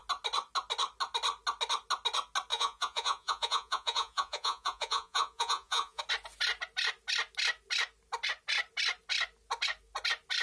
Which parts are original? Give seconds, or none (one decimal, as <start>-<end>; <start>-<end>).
0.0-2.5; 6.0-10.4